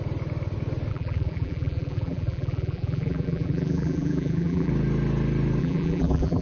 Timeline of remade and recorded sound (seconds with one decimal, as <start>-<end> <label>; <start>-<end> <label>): 0.0-0.9 recorded; 0.9-4.7 remade; 4.7-5.6 recorded; 5.6-6.4 remade